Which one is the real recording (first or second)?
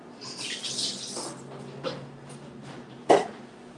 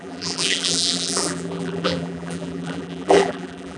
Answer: first